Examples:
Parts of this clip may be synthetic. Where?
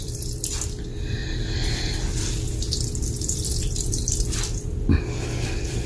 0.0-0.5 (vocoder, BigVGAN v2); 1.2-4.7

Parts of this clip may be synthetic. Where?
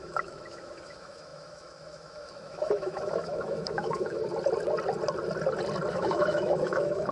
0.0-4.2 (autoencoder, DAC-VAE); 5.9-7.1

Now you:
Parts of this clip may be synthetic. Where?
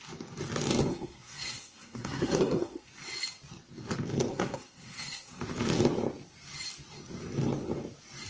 0.9-2.9 (codec, SNAC); 4.3-5.4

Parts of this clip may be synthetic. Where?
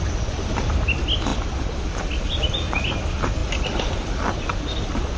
none